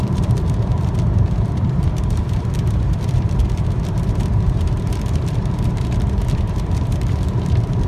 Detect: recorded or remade remade